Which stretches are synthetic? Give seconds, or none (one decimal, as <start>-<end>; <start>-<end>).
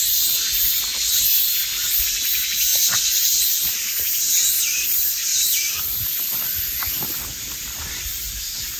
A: 0.0-0.9; 2.0-5.3; 8.4-8.8